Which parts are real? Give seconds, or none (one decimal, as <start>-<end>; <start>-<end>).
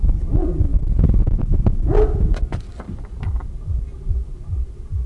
0.0-2.5; 3.2-5.1